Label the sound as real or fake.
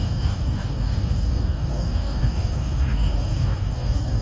fake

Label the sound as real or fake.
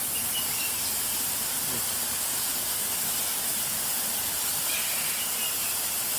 real